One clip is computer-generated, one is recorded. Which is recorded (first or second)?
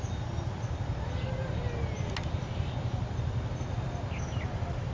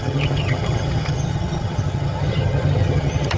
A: first